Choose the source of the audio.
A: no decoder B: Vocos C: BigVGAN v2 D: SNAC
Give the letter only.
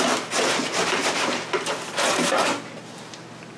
A